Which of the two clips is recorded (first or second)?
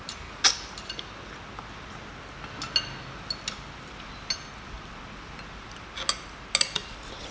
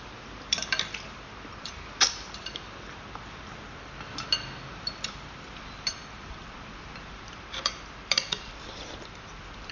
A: first